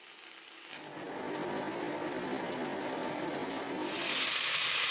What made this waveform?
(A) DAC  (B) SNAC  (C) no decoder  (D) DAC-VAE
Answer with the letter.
C